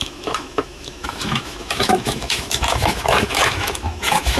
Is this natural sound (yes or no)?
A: no